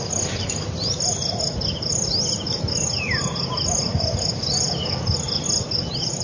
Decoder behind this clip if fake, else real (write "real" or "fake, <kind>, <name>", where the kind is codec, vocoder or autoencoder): real